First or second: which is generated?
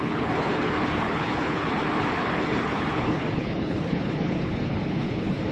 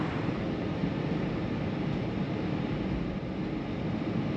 first